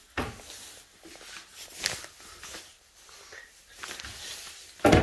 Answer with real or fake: real